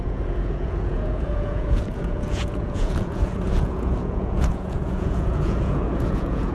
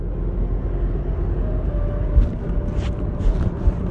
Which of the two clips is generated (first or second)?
first